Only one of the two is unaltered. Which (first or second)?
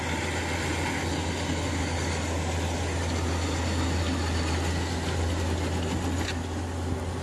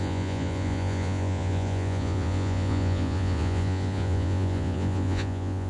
first